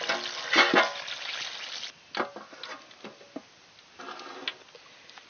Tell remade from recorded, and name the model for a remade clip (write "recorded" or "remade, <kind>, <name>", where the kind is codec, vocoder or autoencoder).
recorded